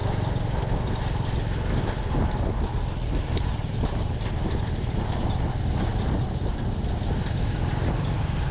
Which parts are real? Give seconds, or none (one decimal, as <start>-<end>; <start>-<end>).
0.0-3.2; 5.9-8.5